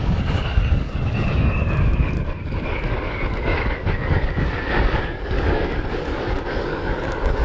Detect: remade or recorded remade